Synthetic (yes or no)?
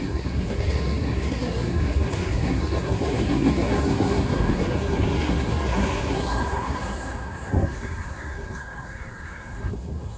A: yes